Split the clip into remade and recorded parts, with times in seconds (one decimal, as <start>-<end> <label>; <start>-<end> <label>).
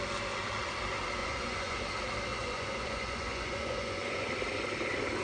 0.0-1.2 recorded; 1.2-1.8 remade; 1.8-2.3 recorded; 2.3-4.3 remade; 4.3-5.2 recorded